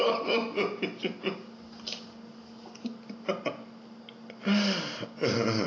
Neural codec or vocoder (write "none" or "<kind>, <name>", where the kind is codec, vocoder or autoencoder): none